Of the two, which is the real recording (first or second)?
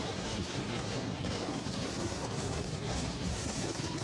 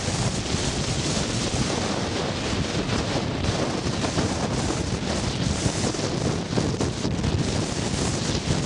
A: second